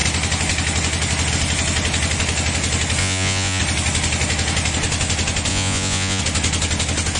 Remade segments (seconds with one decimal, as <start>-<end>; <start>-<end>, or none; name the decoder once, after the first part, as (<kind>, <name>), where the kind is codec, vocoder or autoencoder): 3.0-3.6 (vocoder, Vocos); 5.5-6.2